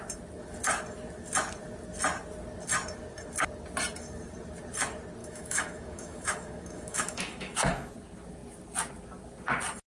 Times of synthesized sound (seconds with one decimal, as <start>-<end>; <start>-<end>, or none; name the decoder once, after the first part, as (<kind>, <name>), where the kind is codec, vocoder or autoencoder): 5.2-7.9 (autoencoder, DAC-VAE)